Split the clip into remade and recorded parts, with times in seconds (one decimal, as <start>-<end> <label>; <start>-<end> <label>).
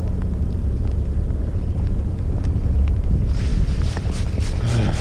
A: 0.0-0.6 recorded; 0.6-1.8 remade; 1.8-3.5 recorded; 3.5-4.1 remade; 4.1-5.0 recorded